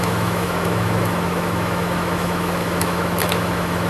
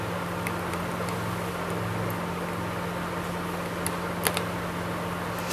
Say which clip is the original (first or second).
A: second